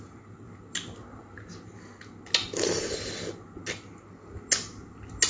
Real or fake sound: real